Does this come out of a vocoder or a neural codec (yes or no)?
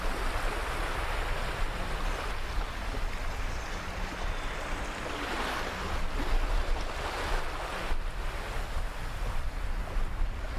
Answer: no